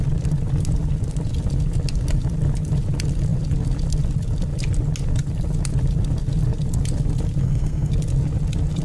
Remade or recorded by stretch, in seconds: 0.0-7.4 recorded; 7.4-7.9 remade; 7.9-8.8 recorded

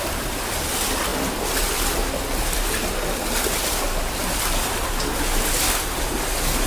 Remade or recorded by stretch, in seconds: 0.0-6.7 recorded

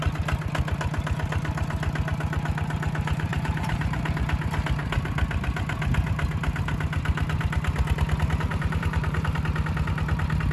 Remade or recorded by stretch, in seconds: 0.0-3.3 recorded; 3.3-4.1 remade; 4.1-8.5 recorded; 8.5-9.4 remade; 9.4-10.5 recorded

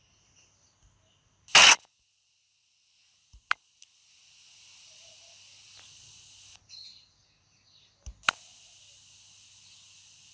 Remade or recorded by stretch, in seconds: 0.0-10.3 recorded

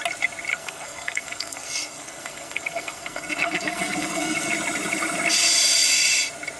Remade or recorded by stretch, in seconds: 0.0-0.5 recorded; 0.5-4.5 remade; 4.5-6.6 recorded